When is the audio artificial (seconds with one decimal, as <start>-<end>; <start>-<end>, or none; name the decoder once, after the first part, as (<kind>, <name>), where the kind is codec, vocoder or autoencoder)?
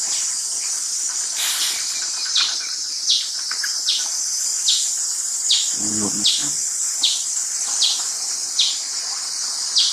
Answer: none